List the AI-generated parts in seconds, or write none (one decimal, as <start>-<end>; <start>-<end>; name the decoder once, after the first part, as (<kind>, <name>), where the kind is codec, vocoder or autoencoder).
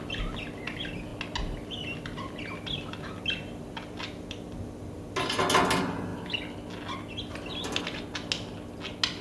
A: none